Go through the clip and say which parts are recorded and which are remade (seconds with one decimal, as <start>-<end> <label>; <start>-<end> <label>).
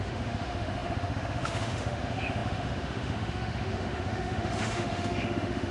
0.0-5.7 remade